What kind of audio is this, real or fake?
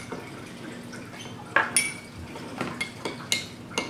real